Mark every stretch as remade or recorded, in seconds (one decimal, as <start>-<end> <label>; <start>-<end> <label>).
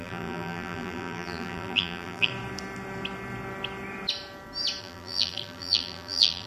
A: 0.0-2.3 remade; 2.3-4.8 recorded; 4.8-6.5 remade